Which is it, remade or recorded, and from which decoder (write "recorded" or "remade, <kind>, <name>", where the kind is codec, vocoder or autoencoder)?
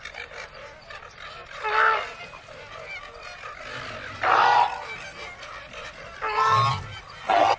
recorded